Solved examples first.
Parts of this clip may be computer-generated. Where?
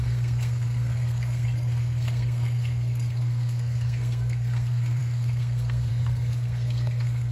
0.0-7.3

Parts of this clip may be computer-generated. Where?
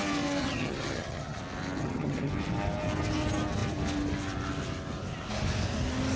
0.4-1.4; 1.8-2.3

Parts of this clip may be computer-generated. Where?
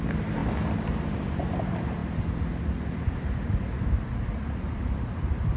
none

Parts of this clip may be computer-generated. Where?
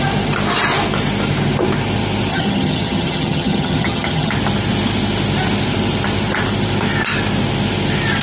2.3-4.3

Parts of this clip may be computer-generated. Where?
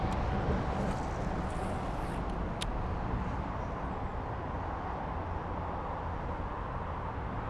none